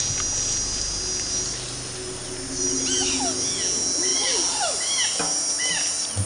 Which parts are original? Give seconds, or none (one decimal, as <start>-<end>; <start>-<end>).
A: 0.0-6.3